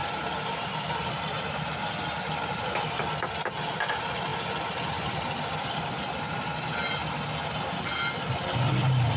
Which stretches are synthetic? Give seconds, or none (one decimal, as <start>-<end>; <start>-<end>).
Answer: none